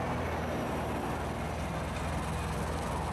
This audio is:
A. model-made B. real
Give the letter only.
B